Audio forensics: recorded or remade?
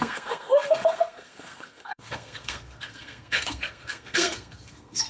remade